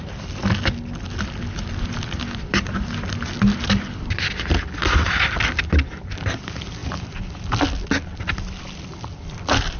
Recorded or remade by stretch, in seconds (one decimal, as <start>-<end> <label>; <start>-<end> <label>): 0.0-9.8 recorded